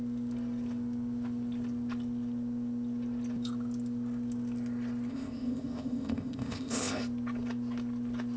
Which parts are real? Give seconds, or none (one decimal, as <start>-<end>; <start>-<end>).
0.0-5.1; 7.0-8.4